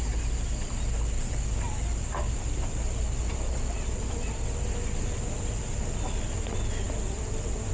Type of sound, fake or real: real